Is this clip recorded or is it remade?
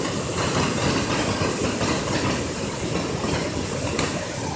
recorded